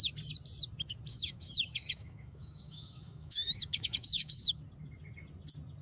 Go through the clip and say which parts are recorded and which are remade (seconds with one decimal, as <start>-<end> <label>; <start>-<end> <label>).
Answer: 0.0-1.1 recorded; 1.1-4.6 remade; 4.6-5.8 recorded